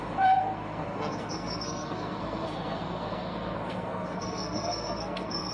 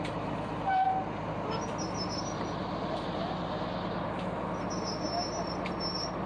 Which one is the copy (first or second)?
first